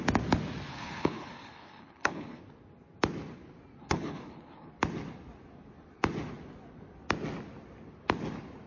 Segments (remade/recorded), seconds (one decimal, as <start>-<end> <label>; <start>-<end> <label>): 0.0-0.7 recorded; 0.7-2.4 remade; 2.4-3.8 recorded; 3.8-4.7 remade; 4.7-8.7 recorded